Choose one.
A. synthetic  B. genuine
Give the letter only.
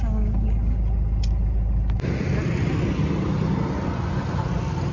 B